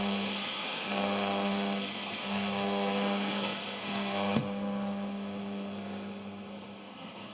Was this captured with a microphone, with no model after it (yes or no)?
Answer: no